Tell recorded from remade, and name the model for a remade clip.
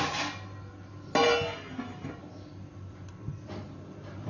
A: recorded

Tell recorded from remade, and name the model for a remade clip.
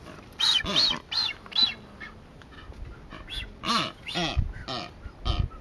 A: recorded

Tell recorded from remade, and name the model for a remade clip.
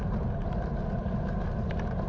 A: recorded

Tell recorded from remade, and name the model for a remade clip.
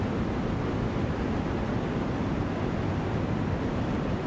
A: recorded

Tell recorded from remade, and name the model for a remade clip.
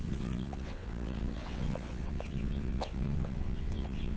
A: remade, vocoder, WaveNeXt